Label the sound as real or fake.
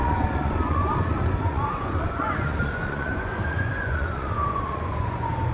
fake